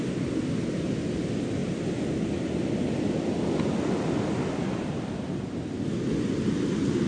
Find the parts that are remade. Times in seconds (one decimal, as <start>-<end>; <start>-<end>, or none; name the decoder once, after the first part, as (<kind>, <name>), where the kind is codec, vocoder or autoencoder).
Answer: none